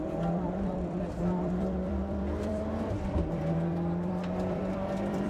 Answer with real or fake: fake